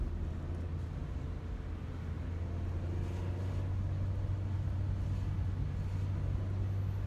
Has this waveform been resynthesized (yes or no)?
no